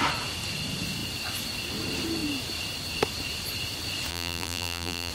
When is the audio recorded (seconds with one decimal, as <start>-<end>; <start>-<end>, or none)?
0.0-4.1